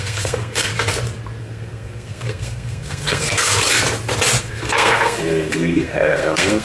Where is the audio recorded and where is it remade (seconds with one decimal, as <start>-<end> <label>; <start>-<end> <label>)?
0.0-0.7 remade; 0.7-1.4 recorded; 1.4-3.5 remade; 3.5-4.4 recorded; 4.4-6.6 remade